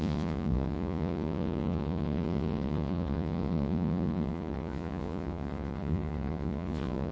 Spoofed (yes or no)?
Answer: yes